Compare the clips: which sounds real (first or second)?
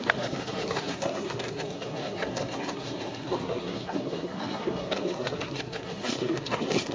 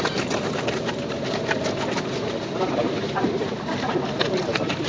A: second